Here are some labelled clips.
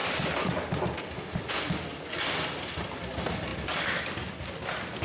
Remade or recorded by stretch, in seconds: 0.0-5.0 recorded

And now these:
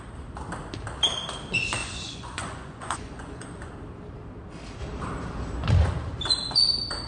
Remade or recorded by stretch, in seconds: 0.0-1.8 recorded; 1.8-3.7 remade; 3.7-7.1 recorded

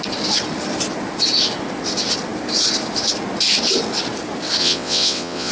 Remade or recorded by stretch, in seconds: 0.0-4.6 recorded; 4.6-5.5 remade